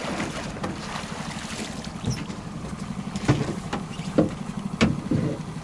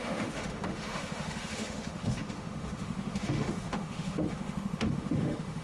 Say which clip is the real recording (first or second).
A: first